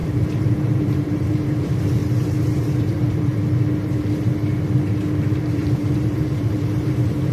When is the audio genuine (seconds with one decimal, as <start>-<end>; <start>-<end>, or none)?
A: 2.0-2.8; 3.3-5.4